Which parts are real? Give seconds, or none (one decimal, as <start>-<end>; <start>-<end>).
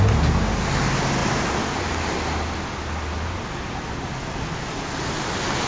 0.0-5.7